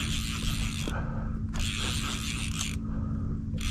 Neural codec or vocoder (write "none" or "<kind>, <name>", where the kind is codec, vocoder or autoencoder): none